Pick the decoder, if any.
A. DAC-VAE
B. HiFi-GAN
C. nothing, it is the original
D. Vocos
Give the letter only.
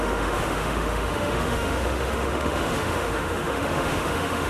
A